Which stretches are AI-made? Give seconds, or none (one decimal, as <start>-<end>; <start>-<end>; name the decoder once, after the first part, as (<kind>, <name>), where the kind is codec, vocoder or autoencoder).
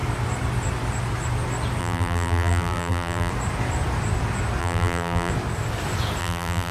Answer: 1.8-3.3 (vocoder, BigVGAN v2); 4.6-5.3; 6.2-6.7